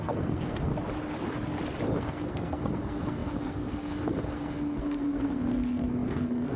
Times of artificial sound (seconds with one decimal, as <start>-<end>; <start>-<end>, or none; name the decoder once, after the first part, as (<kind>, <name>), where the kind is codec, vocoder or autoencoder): 0.0-0.7 (codec, SNAC); 1.9-6.6